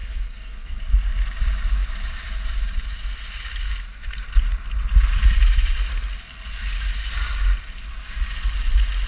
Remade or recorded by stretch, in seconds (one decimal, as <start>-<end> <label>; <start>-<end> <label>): 0.0-0.8 remade; 0.8-9.1 recorded

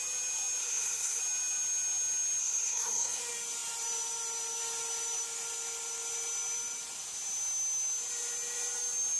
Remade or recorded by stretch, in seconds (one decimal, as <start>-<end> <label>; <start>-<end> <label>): 0.0-0.6 recorded; 0.6-1.2 remade; 1.2-2.4 recorded; 2.4-3.2 remade; 3.2-9.2 recorded